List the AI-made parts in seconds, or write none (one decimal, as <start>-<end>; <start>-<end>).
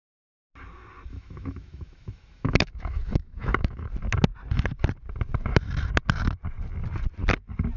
1.1-3.9